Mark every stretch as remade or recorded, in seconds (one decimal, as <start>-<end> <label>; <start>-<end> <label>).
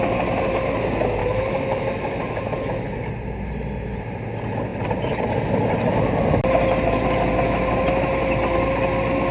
0.0-1.2 recorded; 1.2-3.1 remade; 3.1-9.3 recorded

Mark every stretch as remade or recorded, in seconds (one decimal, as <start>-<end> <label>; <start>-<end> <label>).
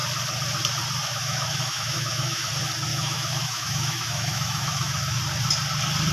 0.0-1.0 recorded; 1.0-2.5 remade; 2.5-2.9 recorded; 2.9-5.2 remade; 5.2-6.1 recorded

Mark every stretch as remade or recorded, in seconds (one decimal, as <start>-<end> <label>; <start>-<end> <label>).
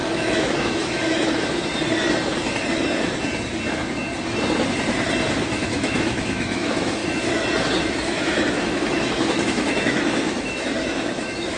0.0-1.7 remade; 1.7-5.7 recorded; 5.7-7.0 remade; 7.0-7.8 recorded; 7.8-11.6 remade